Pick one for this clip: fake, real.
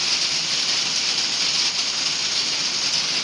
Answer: real